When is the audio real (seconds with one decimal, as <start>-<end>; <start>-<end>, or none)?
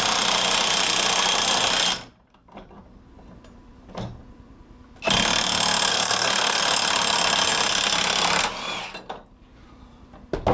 0.0-5.9; 6.6-10.5